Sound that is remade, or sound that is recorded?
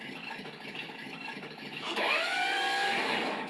remade